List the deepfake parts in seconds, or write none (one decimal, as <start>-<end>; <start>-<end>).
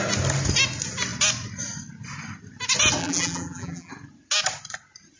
3.0-3.9